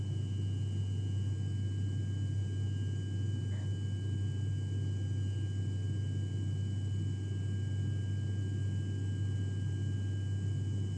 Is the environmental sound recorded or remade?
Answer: recorded